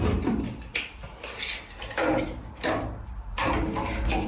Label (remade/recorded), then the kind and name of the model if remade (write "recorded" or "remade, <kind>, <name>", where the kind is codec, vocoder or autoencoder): recorded